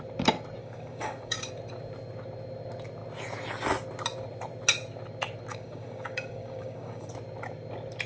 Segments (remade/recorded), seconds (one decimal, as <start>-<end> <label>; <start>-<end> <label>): 0.0-0.6 recorded; 0.6-1.5 remade; 1.5-5.5 recorded; 5.5-7.1 remade; 7.1-8.1 recorded